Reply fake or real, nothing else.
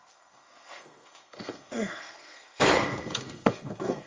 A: fake